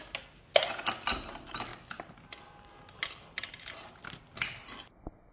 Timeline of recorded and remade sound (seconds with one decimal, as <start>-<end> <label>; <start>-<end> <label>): 0.0-5.3 recorded